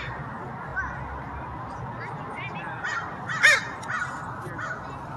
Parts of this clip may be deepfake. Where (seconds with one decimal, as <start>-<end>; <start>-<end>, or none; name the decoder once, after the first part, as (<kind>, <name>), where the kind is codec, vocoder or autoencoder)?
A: none